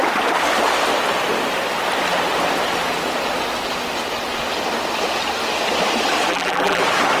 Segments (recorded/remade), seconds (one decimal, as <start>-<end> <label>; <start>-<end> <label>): 0.0-6.3 recorded; 6.3-6.8 remade; 6.8-7.2 recorded